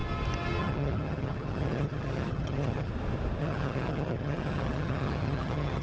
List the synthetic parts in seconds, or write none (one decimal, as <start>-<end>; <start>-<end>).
0.6-2.9; 3.4-5.8